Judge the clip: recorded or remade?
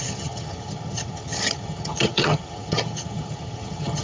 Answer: remade